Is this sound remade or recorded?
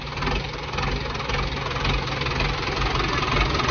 recorded